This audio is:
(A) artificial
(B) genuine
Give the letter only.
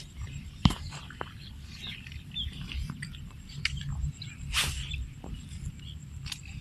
B